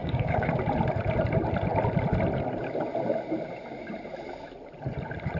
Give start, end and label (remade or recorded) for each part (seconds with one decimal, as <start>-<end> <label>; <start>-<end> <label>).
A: 0.0-0.5 remade; 0.5-5.4 recorded